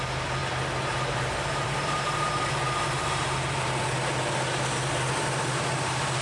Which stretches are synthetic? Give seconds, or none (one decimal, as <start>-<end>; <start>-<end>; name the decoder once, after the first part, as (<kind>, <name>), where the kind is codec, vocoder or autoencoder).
0.4-2.4 (vocoder, BigVGAN v2); 3.0-3.8